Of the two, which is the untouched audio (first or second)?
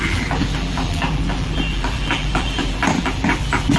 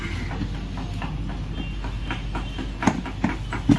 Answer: second